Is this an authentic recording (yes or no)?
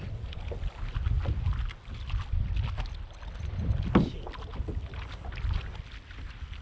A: yes